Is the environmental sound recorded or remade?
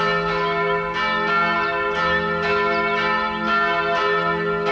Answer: recorded